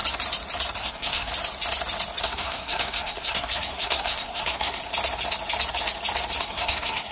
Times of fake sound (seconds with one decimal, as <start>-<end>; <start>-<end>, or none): 0.8-1.3; 2.2-4.8; 6.4-7.1